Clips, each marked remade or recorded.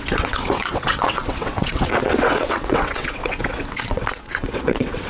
remade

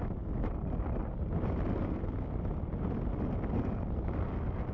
recorded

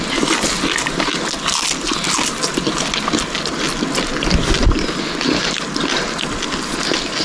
recorded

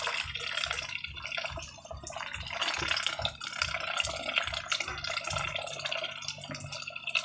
recorded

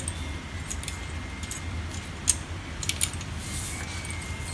recorded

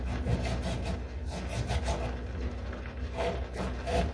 recorded